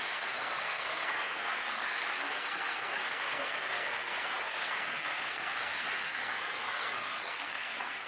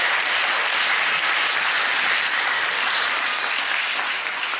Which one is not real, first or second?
first